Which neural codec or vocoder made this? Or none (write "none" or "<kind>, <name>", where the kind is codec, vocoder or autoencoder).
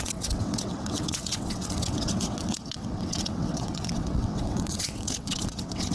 vocoder, WaveNeXt